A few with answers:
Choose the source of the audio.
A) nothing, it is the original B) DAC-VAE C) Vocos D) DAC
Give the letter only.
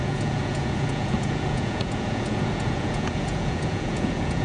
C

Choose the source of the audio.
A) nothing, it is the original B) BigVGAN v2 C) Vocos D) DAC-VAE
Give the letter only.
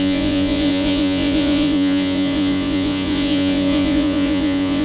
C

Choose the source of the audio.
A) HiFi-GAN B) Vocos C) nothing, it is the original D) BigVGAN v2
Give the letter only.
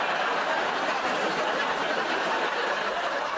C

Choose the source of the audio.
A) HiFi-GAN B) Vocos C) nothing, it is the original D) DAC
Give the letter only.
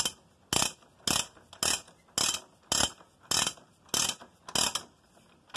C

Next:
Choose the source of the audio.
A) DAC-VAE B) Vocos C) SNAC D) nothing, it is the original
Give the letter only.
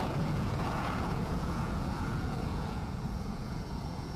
B